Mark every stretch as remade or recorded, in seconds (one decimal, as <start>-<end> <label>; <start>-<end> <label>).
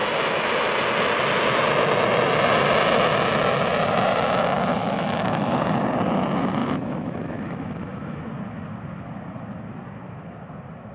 0.0-4.8 recorded; 4.8-5.6 remade; 5.6-6.6 recorded; 6.6-8.2 remade; 8.2-10.9 recorded